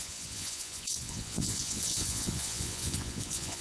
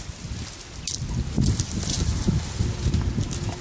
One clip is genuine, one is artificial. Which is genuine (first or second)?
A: second